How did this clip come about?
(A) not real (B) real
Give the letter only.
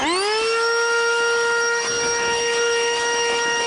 B